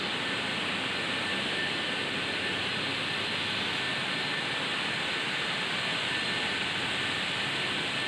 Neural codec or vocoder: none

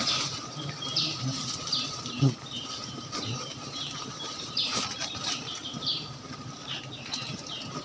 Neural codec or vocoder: vocoder, BigVGAN v2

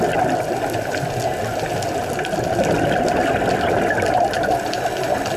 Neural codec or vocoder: none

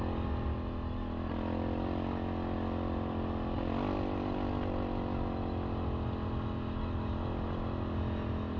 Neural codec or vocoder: none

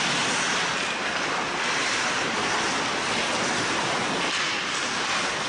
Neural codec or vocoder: none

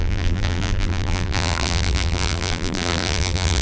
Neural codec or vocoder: vocoder, BigVGAN v2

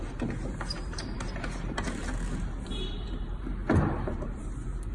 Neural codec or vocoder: vocoder, BigVGAN v2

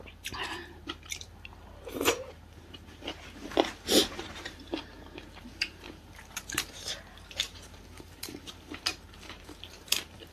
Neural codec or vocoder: vocoder, BigVGAN v2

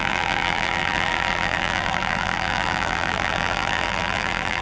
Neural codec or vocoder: vocoder, BigVGAN v2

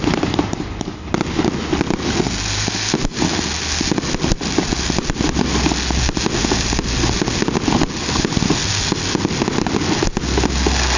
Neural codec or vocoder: none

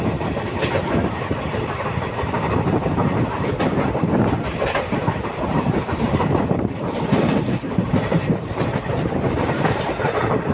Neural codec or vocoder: vocoder, BigVGAN v2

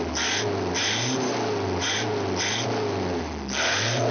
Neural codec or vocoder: none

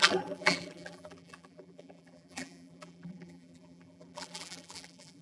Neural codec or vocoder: vocoder, BigVGAN v2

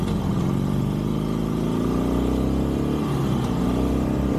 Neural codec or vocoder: none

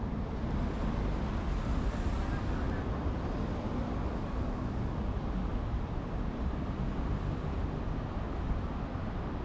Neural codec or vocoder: none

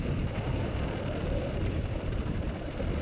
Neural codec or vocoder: vocoder, BigVGAN v2